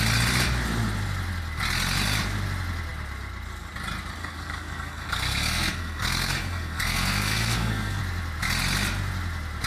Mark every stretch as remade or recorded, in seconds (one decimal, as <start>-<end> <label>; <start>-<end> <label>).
0.0-4.2 recorded; 4.2-8.0 remade; 8.0-9.7 recorded